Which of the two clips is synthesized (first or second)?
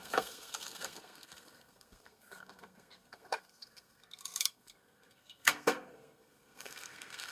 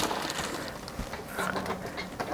first